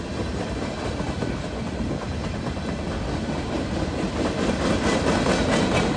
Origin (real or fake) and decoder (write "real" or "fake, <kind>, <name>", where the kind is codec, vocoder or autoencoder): real